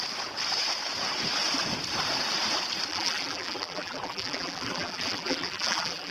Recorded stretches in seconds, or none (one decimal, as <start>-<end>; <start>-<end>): 0.0-2.9